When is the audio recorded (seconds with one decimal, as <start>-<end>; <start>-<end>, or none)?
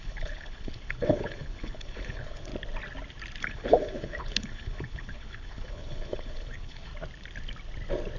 2.5-3.4; 6.9-8.2